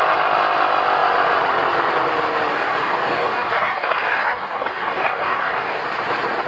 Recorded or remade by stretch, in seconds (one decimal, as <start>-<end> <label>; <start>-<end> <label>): 0.0-2.5 recorded; 2.5-5.8 remade; 5.8-6.5 recorded